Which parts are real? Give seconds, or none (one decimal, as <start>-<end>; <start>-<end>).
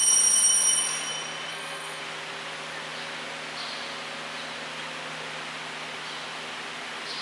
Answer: 0.0-1.5; 2.0-7.2